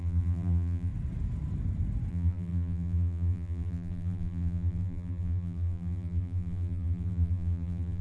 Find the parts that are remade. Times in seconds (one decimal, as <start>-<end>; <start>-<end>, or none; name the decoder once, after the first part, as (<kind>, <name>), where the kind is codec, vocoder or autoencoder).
0.0-0.9 (vocoder, BigVGAN v2); 2.1-8.0